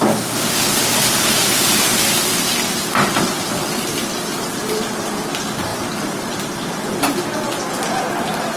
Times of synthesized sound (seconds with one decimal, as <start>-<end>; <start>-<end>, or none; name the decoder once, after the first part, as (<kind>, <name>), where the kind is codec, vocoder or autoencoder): 0.0-8.6 (vocoder, BigVGAN v2)

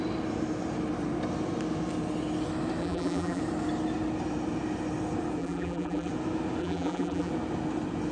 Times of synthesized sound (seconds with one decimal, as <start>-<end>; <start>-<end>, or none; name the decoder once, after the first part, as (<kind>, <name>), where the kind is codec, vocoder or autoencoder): 2.8-3.4 (vocoder, BigVGAN v2); 5.4-6.1; 6.6-7.3